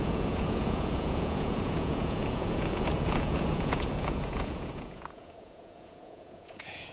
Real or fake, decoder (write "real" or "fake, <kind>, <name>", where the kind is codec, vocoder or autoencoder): fake, vocoder, Vocos